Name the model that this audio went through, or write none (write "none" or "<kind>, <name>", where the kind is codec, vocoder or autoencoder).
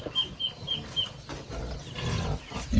none